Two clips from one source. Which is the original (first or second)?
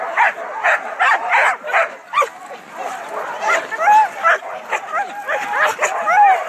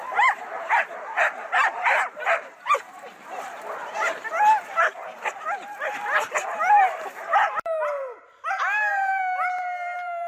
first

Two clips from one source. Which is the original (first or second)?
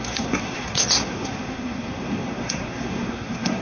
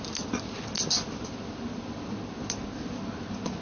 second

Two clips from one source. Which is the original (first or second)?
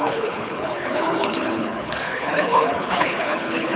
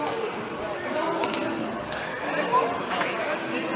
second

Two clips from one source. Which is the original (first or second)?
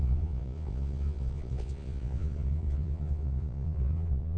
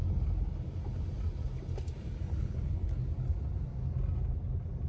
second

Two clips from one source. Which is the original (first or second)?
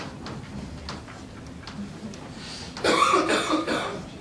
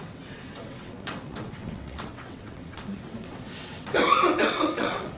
first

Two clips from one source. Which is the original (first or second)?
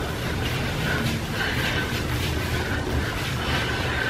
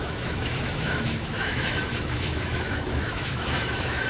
first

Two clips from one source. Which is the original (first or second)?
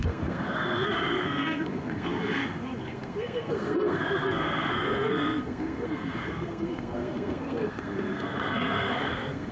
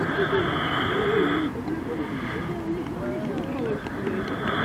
second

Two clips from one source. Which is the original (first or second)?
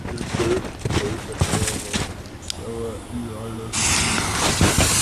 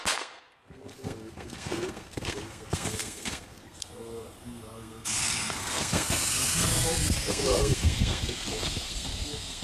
first